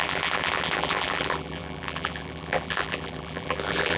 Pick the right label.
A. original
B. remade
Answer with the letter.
B